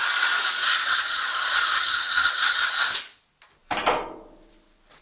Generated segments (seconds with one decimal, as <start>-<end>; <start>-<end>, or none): 0.6-2.8